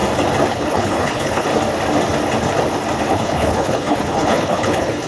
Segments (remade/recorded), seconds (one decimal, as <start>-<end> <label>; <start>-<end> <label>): 0.0-0.5 recorded; 0.5-1.5 remade; 1.5-3.1 recorded; 3.1-5.1 remade